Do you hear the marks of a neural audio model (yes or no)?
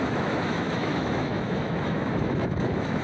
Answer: yes